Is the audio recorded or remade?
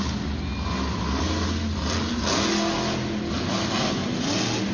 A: recorded